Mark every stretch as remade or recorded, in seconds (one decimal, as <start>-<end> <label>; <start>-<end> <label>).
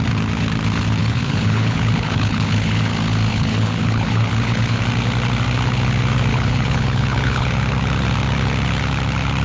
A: 0.0-1.0 recorded; 1.0-2.8 remade; 2.8-3.3 recorded; 3.3-4.8 remade; 4.8-6.3 recorded; 6.3-7.5 remade; 7.5-9.4 recorded